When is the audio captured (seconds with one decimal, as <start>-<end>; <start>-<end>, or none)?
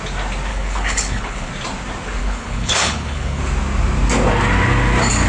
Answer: 0.0-0.5; 1.5-2.2; 3.4-5.3